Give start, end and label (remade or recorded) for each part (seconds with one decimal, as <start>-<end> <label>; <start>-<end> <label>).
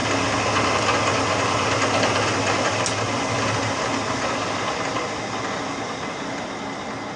0.0-7.2 recorded